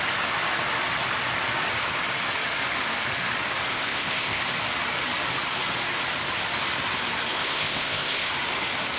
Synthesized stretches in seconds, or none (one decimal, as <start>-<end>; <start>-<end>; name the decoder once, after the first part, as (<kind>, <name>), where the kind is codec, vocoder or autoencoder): 3.7-4.4 (codec, ZipCodec); 7.3-8.3